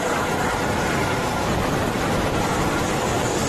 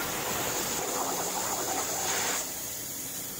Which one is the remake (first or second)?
second